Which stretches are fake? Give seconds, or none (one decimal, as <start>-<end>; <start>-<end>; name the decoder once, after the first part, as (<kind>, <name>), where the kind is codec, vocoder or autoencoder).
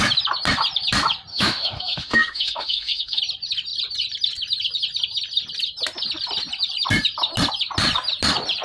1.3-3.2 (autoencoder, DAC-VAE)